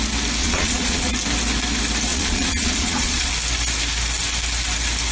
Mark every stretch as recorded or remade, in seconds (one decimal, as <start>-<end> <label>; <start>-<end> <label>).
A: 0.0-0.4 recorded; 0.4-1.1 remade; 1.1-2.1 recorded; 2.1-3.3 remade; 3.3-5.1 recorded